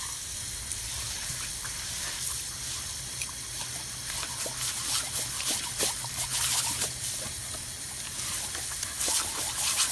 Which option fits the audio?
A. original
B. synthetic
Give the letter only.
A